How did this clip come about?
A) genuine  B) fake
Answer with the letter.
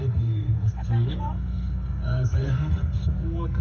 B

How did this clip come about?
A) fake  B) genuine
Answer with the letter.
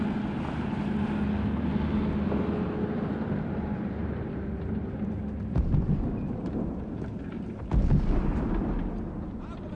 B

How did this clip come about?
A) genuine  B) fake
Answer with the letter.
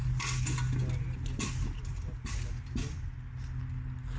A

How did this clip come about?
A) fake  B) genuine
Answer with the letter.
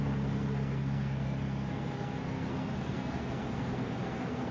A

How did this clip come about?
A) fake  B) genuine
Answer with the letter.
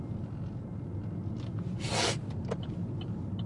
B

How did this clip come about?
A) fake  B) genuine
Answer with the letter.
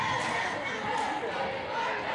B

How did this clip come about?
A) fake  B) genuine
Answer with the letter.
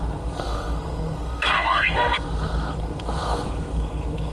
A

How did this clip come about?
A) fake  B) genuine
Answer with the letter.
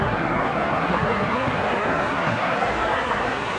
A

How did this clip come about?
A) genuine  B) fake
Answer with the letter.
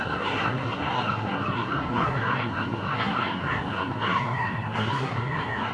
B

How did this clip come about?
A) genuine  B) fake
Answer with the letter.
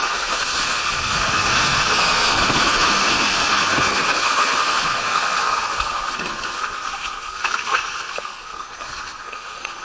B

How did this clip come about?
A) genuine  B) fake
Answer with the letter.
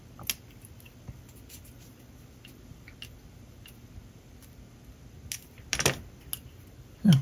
A